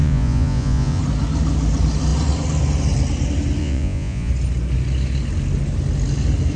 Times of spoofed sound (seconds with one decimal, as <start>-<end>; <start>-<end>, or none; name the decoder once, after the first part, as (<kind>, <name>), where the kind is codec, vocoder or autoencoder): 0.0-1.0 (vocoder, Vocos); 3.6-4.3